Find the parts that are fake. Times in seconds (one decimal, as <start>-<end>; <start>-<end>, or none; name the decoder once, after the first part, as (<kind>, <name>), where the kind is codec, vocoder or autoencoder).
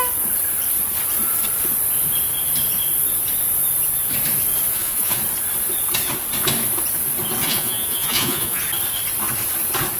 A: 4.7-5.2 (vocoder, Vocos); 7.4-8.6